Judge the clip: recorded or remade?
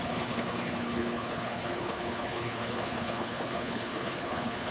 remade